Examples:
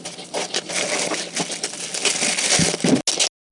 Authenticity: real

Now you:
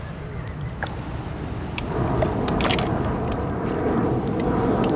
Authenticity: real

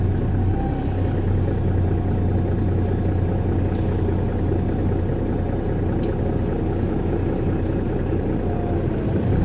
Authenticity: real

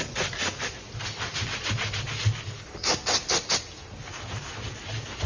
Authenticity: real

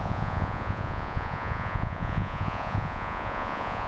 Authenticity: fake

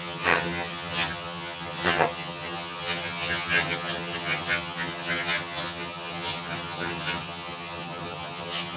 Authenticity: fake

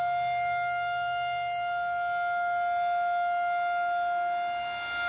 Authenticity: real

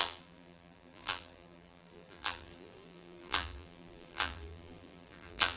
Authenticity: fake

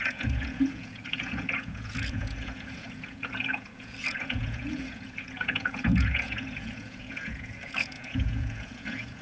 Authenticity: fake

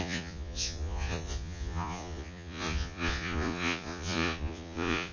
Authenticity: fake